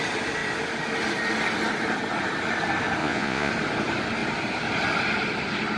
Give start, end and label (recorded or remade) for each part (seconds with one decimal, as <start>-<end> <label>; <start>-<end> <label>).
0.0-3.0 recorded; 3.0-3.5 remade; 3.5-5.8 recorded